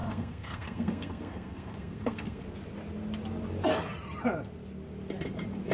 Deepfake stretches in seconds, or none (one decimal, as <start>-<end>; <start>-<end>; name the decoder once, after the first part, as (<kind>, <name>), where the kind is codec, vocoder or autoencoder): 0.0-2.4 (codec, SNAC)

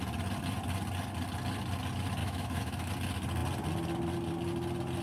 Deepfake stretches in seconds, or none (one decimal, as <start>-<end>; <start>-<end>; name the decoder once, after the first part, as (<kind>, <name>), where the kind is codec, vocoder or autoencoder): 2.2-2.9 (autoencoder, DAC-VAE)

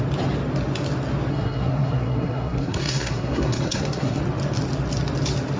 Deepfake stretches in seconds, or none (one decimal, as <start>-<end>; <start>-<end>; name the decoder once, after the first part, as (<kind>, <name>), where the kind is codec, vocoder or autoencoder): 1.3-4.2 (codec, SNAC)

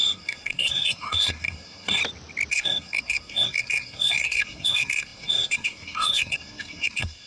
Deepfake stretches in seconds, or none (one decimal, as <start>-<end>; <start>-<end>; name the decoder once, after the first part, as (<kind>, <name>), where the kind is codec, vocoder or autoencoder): 0.0-2.0 (codec, SNAC); 2.5-7.3

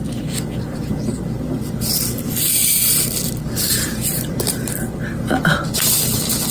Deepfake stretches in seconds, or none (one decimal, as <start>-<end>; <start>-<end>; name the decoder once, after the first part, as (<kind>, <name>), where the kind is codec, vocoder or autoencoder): none